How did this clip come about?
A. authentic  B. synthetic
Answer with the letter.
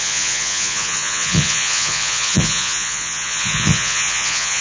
B